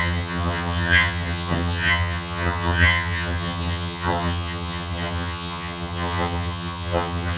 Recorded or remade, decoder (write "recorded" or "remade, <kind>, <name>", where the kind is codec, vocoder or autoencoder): remade, vocoder, HiFi-GAN